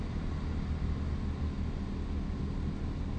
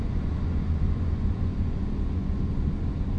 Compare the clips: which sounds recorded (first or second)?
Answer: first